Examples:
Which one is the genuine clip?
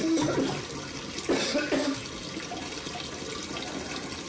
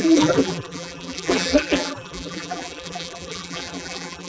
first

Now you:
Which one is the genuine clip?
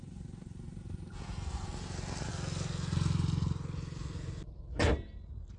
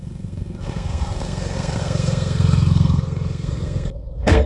first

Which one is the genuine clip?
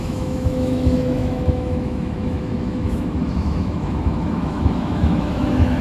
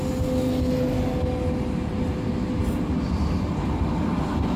second